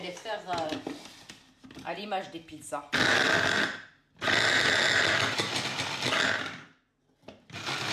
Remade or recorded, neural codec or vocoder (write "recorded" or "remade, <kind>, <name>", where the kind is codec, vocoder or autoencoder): recorded